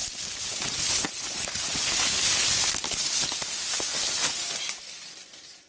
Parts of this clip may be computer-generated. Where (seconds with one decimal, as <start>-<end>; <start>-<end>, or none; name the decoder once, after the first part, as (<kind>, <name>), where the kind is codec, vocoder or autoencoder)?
none